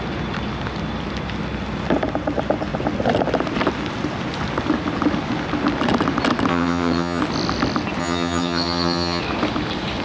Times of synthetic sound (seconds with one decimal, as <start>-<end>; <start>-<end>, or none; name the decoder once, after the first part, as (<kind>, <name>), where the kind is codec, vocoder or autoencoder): 6.5-7.2 (vocoder, HiFi-GAN); 8.0-9.2